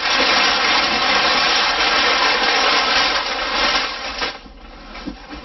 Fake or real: real